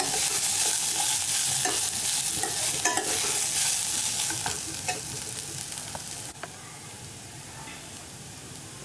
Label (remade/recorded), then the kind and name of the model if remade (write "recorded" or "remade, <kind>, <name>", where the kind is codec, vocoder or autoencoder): recorded